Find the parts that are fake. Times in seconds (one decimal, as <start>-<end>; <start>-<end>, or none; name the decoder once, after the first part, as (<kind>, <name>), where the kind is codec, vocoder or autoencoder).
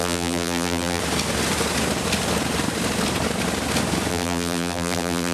0.0-1.0 (vocoder, BigVGAN v2); 4.1-5.3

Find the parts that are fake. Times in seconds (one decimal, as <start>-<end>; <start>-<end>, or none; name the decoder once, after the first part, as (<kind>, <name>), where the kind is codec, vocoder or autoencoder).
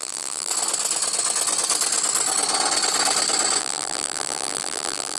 0.0-0.5 (vocoder, BigVGAN v2); 3.6-5.2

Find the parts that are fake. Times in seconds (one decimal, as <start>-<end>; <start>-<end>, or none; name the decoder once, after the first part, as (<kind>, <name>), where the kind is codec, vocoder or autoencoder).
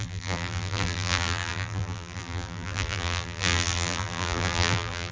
0.0-5.1 (vocoder, BigVGAN v2)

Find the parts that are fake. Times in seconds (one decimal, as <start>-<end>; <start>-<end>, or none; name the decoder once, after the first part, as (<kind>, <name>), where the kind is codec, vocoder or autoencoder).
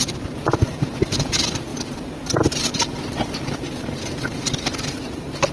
0.0-5.5 (vocoder, BigVGAN v2)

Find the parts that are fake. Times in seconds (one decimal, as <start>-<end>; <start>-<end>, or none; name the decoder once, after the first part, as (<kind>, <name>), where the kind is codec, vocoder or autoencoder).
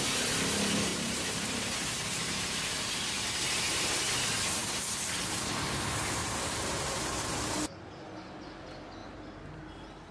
0.9-3.4 (vocoder, BigVGAN v2); 4.6-5.6; 6.2-7.5; 9.0-9.6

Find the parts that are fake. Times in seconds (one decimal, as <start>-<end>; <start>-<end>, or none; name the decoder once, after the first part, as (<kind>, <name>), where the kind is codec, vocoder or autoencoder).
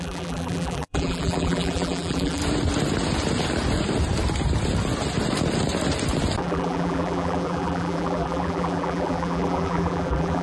0.0-2.4 (vocoder, BigVGAN v2); 6.4-10.4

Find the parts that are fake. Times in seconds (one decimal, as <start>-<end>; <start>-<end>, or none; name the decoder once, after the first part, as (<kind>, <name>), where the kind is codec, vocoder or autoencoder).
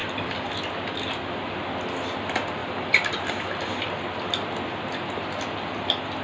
2.6-3.9 (vocoder, BigVGAN v2)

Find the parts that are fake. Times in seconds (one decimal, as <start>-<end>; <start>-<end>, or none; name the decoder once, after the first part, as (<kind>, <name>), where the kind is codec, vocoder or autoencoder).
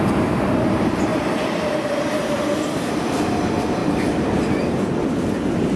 0.0-3.8 (vocoder, BigVGAN v2); 5.1-5.8